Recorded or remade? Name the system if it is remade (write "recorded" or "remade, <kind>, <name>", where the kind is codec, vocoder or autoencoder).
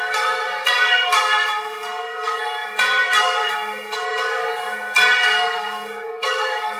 remade, codec, SNAC